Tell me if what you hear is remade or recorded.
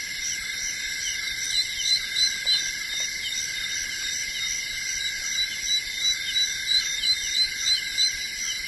recorded